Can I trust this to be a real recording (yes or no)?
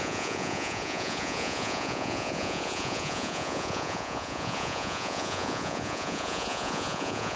no